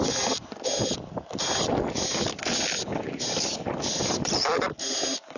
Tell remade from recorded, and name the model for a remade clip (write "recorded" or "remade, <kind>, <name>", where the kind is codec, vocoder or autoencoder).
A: recorded